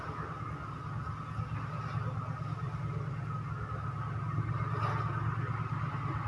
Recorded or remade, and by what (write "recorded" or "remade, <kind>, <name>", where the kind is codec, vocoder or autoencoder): recorded